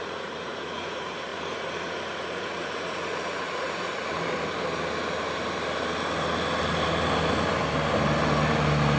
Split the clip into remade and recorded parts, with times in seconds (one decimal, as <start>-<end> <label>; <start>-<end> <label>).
0.0-4.0 remade; 4.0-9.0 recorded